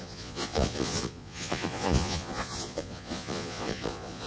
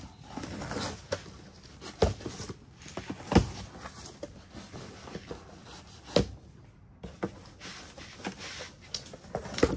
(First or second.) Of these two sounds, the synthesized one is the first